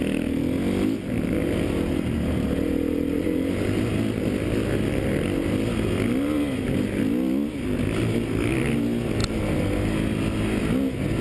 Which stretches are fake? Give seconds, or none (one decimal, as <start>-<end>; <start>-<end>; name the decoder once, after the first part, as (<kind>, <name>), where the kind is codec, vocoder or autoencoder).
none